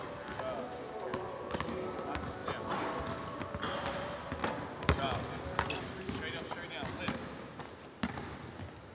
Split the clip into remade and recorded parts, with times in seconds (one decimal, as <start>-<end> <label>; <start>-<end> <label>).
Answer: 0.0-2.4 recorded; 2.4-3.0 remade; 3.0-4.4 recorded; 4.4-5.8 remade; 5.8-8.9 recorded